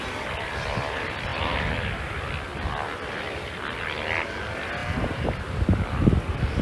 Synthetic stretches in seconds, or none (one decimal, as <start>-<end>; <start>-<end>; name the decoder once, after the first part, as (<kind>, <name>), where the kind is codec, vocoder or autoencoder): none